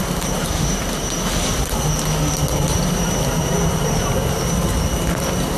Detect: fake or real real